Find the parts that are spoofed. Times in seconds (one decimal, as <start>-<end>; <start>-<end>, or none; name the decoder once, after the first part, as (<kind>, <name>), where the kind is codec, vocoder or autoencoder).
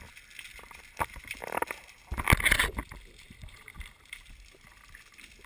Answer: 0.5-1.5 (vocoder, BigVGAN v2); 3.4-4.7